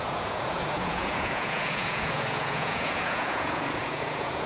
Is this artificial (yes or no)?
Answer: yes